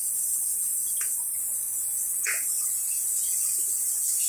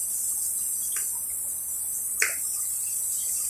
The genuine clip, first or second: second